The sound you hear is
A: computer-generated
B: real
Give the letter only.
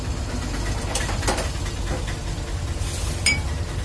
B